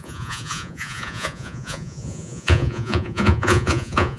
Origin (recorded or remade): remade